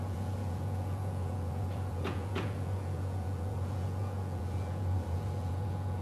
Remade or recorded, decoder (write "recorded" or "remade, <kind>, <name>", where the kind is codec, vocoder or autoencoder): remade, vocoder, Vocos